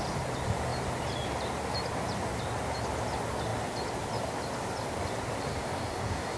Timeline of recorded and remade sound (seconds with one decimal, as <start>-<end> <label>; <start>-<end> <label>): 0.0-5.5 recorded; 5.5-6.4 remade